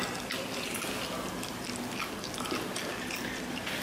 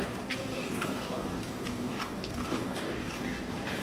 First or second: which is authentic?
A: first